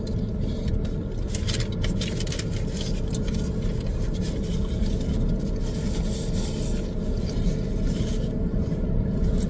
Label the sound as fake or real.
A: real